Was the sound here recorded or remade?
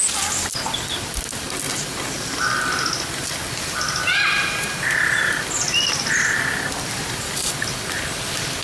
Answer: recorded